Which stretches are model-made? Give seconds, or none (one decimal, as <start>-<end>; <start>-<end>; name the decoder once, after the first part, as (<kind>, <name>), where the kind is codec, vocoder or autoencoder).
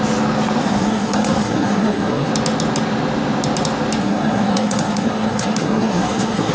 0.6-2.3 (codec, SNAC); 4.0-6.5